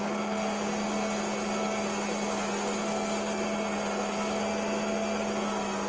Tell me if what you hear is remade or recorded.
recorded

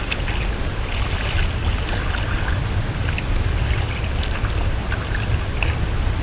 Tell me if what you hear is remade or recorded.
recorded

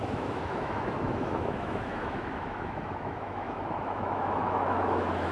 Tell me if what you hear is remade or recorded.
remade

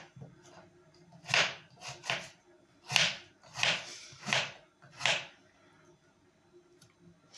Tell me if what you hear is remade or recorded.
recorded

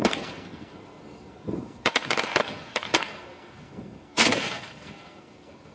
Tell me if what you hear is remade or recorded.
remade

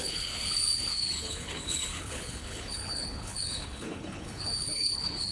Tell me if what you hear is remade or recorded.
remade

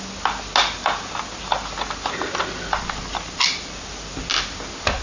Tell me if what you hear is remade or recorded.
recorded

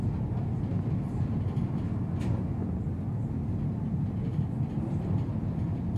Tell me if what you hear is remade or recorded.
recorded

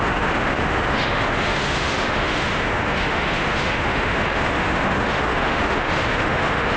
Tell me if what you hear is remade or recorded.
remade